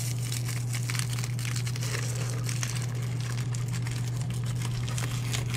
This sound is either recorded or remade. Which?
recorded